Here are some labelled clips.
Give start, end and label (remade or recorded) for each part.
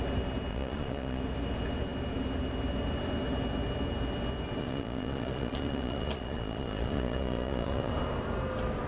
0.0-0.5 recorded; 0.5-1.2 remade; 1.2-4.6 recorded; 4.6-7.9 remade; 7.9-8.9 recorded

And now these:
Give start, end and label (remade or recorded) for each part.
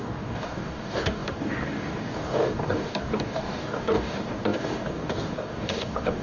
0.0-6.2 remade